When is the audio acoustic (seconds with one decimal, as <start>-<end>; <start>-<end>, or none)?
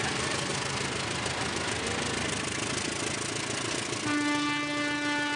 0.0-5.4